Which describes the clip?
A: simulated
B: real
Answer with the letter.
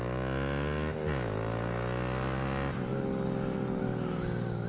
B